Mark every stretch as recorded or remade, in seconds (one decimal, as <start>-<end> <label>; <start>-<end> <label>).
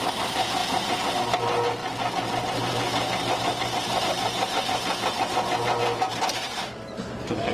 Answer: 0.0-7.5 recorded